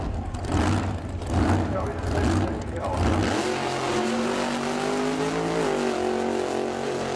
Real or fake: real